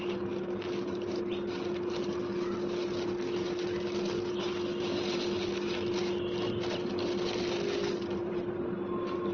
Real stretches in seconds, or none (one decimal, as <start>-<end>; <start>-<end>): 0.0-7.8; 8.6-9.3